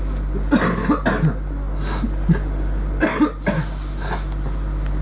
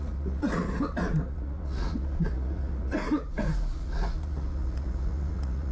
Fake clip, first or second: second